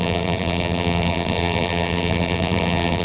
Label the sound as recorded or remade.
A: remade